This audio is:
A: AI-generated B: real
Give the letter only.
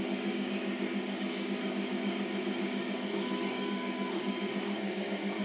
A